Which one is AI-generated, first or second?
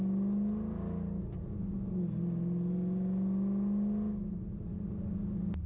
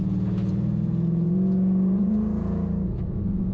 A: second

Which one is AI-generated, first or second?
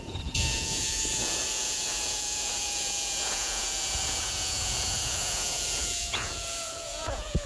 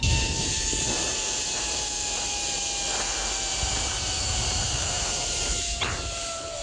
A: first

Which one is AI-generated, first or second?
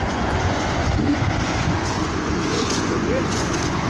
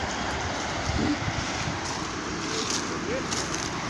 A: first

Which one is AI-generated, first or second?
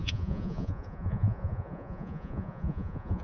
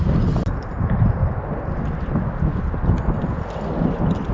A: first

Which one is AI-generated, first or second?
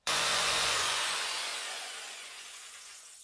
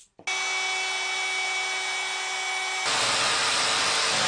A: first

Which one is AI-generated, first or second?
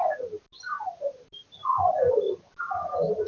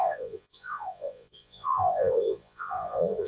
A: second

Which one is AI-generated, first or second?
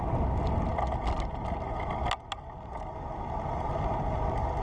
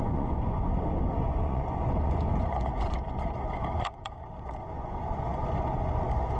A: second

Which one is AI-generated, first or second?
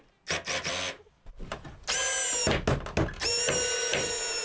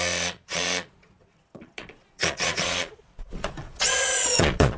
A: second